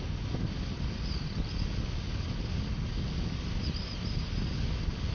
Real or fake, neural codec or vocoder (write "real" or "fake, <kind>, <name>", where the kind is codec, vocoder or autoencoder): real